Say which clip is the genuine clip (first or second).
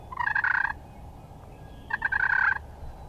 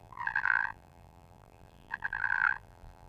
first